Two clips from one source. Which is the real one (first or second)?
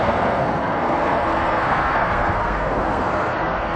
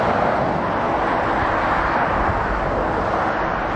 second